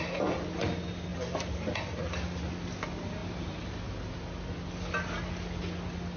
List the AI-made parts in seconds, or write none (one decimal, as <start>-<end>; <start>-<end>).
none